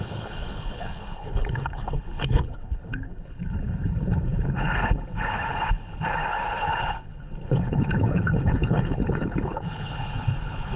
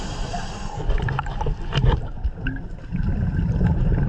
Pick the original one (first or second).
second